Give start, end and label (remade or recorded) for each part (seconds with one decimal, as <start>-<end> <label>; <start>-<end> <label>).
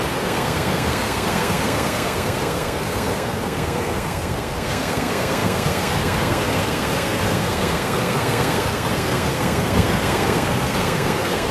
0.0-11.5 remade